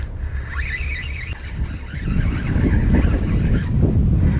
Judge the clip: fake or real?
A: fake